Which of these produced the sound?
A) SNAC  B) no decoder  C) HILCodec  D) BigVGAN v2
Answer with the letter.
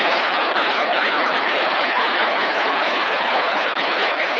C